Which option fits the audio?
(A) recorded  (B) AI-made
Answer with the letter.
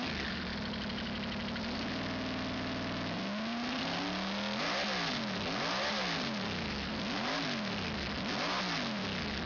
A